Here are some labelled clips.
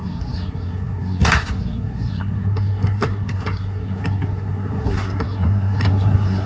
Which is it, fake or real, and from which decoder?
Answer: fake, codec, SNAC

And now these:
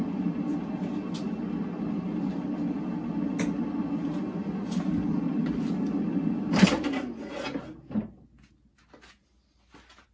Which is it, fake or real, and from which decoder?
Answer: real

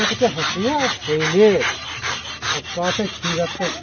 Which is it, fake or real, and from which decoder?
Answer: real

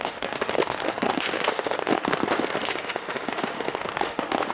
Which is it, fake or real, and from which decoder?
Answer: fake, autoencoder, DAC-VAE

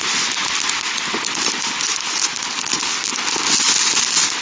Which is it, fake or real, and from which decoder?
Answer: real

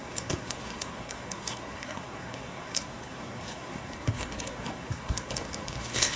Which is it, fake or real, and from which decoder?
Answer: fake, codec, SNAC